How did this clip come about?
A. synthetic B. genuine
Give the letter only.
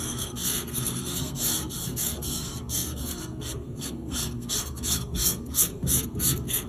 A